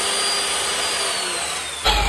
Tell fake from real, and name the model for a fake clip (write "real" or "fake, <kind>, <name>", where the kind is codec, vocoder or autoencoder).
real